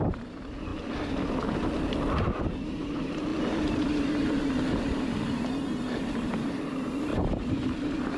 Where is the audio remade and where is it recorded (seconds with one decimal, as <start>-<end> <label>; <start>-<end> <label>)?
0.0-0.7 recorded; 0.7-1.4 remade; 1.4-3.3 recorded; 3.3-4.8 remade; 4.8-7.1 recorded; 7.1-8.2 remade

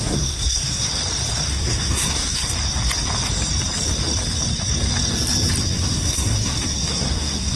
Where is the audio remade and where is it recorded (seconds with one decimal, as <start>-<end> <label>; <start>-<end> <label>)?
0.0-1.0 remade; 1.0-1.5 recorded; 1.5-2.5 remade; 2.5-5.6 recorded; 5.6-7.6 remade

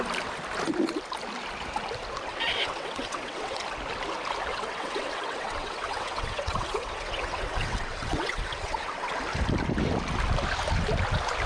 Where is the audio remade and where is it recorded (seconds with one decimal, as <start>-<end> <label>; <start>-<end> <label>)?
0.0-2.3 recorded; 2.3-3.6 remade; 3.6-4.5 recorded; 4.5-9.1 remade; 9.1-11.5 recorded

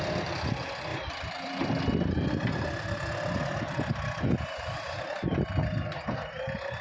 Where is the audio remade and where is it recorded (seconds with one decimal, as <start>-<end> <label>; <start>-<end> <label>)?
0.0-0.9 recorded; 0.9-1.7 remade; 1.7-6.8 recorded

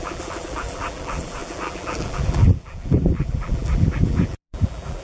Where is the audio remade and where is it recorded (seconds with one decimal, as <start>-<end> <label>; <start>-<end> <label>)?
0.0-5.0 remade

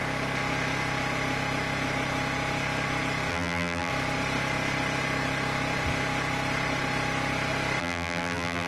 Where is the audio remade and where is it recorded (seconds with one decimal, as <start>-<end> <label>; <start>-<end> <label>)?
0.0-3.3 recorded; 3.3-3.9 remade; 3.9-7.8 recorded; 7.8-8.7 remade